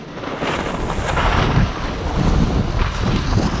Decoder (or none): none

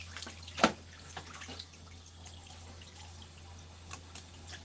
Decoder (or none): none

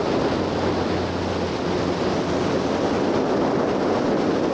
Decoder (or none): none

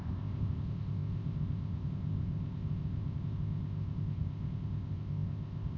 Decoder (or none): codec, ZipCodec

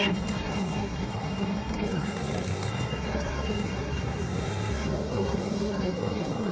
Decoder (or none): codec, SNAC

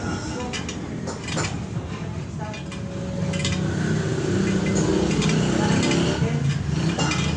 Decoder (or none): none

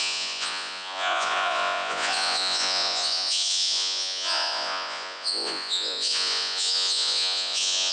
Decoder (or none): vocoder, Vocos